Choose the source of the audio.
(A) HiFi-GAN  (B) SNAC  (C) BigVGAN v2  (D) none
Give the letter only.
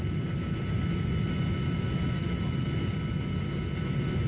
D